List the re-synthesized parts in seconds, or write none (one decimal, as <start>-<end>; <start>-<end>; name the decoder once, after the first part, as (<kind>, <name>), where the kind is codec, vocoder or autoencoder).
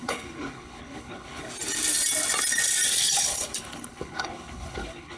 0.0-1.5 (codec, HILCodec); 2.9-5.2